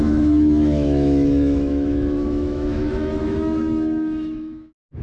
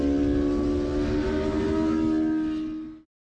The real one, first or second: second